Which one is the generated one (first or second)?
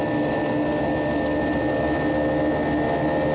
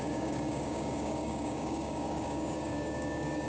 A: second